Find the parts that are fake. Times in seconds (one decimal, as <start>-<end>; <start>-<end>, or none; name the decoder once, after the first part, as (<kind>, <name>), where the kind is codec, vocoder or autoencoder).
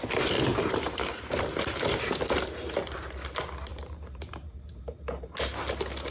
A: 0.5-1.4 (vocoder, BigVGAN v2); 3.7-4.8